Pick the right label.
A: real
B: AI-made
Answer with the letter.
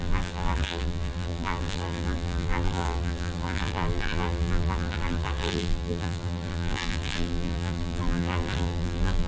B